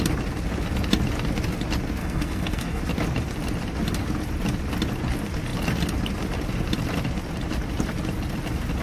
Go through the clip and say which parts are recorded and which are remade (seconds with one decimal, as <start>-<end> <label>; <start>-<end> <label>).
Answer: 0.0-2.0 recorded; 2.0-2.8 remade; 2.8-8.8 recorded